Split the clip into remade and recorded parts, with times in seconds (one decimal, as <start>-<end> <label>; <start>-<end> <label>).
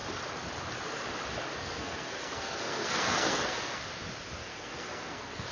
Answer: 0.0-1.6 recorded; 1.6-3.8 remade; 3.8-4.4 recorded; 4.4-5.5 remade